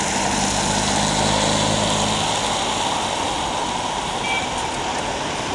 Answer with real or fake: real